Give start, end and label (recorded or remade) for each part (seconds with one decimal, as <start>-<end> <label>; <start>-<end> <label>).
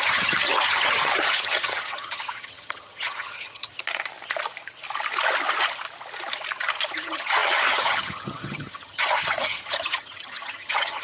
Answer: 0.0-3.7 remade; 3.7-6.9 recorded; 6.9-11.0 remade